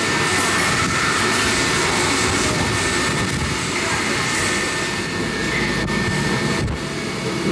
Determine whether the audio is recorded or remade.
recorded